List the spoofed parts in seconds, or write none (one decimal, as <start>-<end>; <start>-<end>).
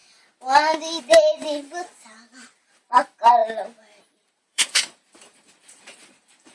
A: 1.0-3.4; 4.0-6.5